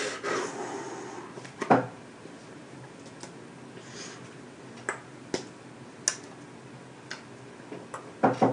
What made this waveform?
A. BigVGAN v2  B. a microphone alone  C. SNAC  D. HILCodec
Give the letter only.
B